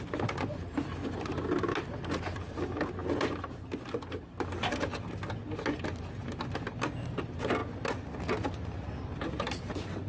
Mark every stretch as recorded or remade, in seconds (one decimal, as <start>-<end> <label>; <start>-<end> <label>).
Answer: 0.0-10.1 recorded